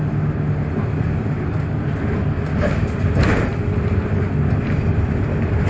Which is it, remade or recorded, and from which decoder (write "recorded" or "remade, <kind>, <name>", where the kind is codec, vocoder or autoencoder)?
recorded